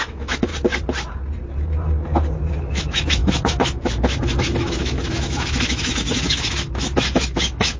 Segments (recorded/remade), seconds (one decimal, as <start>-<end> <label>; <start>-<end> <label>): 0.0-0.5 remade; 0.5-2.6 recorded; 2.6-7.8 remade